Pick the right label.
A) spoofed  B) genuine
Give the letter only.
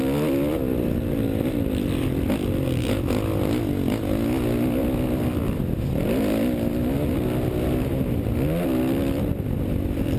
B